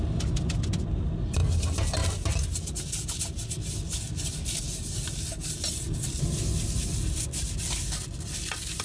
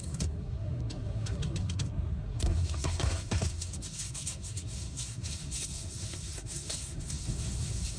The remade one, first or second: second